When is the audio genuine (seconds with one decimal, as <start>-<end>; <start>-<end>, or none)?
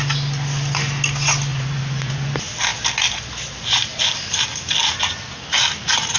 0.0-1.5; 2.3-6.2